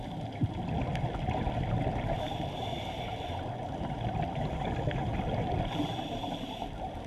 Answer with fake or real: real